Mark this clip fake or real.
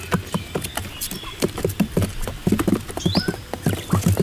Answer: real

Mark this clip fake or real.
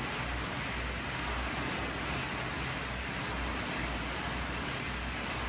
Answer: real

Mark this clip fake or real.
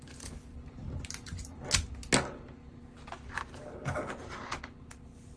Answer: real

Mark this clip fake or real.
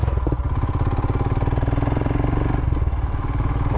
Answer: real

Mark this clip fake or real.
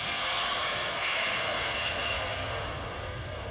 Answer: fake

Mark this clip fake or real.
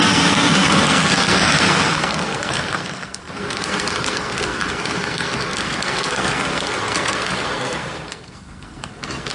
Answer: fake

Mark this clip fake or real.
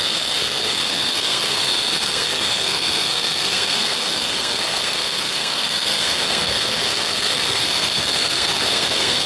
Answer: fake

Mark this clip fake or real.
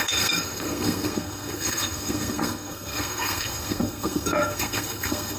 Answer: fake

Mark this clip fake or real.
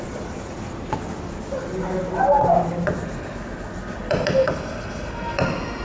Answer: real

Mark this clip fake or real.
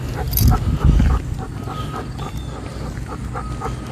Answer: real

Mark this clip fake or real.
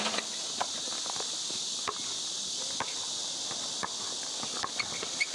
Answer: real